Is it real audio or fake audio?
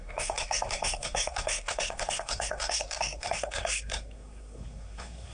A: fake